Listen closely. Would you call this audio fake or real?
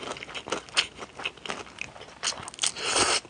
real